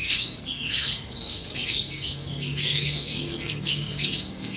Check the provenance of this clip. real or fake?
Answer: fake